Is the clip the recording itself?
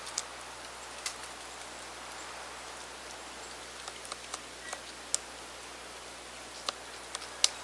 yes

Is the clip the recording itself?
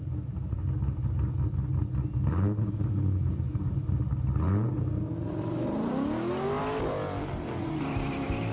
yes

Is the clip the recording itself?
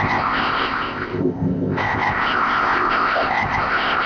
no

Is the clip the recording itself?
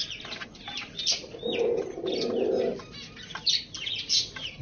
yes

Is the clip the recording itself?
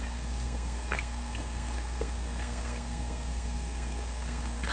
no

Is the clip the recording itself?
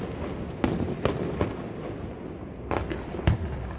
yes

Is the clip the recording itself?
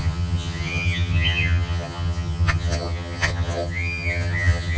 no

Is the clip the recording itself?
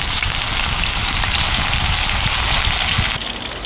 yes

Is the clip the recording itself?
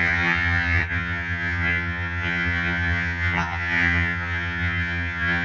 no